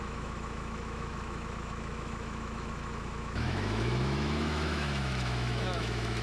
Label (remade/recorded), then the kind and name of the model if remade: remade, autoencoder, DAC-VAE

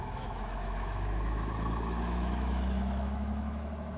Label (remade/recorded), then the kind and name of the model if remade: remade, autoencoder, DAC-VAE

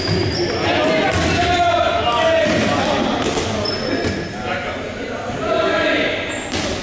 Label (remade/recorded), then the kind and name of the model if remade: recorded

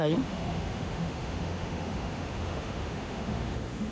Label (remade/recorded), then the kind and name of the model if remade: remade, autoencoder, DAC-VAE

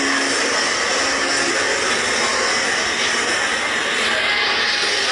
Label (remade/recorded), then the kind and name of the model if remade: recorded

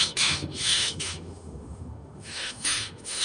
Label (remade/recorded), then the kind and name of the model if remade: remade, autoencoder, DAC-VAE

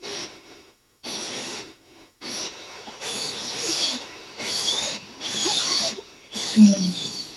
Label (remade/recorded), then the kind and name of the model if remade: remade, autoencoder, DAC-VAE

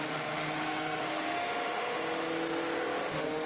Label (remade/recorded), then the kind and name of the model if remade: remade, autoencoder, DAC-VAE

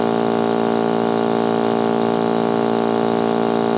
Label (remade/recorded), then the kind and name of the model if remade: recorded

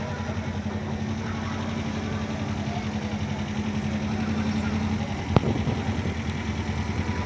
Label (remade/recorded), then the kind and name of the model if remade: recorded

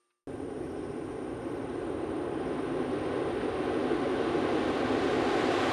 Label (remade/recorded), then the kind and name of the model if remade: recorded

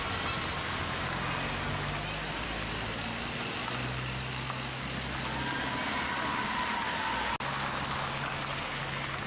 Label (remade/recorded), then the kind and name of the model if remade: recorded